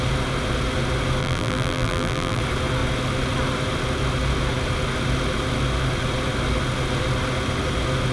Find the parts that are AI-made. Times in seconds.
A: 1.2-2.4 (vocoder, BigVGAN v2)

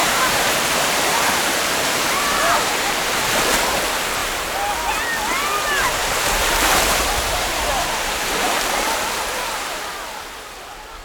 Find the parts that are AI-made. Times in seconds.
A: 0.0-3.8 (vocoder, BigVGAN v2); 4.2-4.9; 6.0-9.8

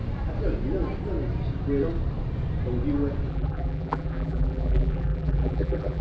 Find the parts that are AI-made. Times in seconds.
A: 3.3-6.0 (vocoder, BigVGAN v2)